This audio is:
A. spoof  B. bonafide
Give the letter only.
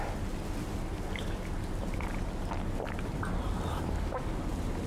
B